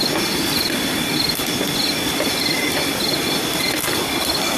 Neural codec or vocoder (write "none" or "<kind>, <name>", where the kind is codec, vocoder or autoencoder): none